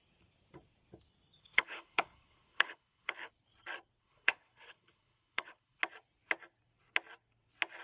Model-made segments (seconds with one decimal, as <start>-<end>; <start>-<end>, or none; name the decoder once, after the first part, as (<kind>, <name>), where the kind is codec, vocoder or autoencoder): 1.4-3.3 (codec, HILCodec); 4.0-5.8